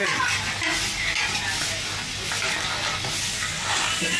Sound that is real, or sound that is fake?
real